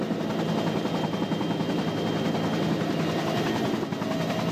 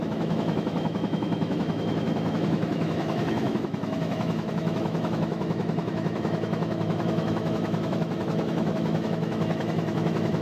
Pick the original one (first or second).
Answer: first